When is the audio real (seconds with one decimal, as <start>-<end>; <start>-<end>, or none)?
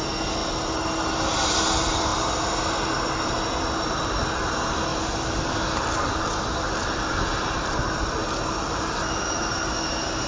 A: 0.0-10.3